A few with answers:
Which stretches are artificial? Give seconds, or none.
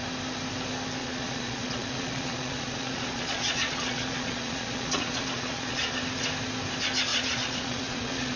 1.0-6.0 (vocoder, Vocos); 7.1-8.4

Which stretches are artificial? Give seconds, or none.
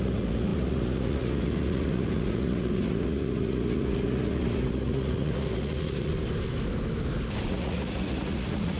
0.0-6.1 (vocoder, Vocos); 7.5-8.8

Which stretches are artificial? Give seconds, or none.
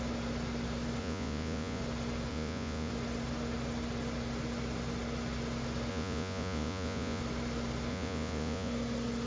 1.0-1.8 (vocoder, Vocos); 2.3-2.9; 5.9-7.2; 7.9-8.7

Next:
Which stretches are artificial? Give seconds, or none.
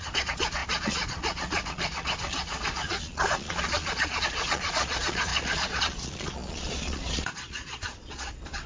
0.0-8.7 (vocoder, Vocos)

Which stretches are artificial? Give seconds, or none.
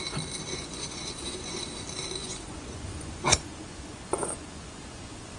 0.5-1.7 (vocoder, Vocos); 2.2-5.4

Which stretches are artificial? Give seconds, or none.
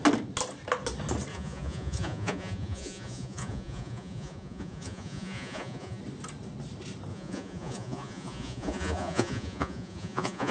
1.3-6.0 (vocoder, Vocos); 7.1-10.5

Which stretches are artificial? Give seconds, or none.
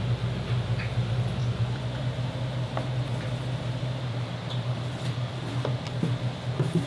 1.4-2.0 (vocoder, Vocos)